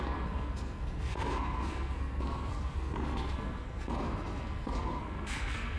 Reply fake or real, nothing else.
fake